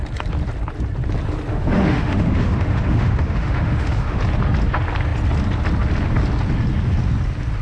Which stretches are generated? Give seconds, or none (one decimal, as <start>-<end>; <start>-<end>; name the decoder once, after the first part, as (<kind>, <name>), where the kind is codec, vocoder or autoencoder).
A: 1.5-4.2 (autoencoder, DAC-VAE)